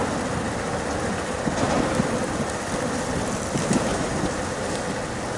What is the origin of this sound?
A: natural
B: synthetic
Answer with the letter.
A